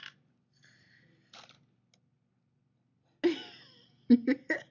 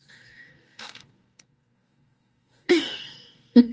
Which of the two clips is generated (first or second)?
second